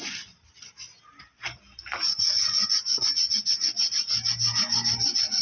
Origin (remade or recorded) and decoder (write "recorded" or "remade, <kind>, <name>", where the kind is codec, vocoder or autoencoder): recorded